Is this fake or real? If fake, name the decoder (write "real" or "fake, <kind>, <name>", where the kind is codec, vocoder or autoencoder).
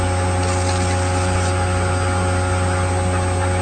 real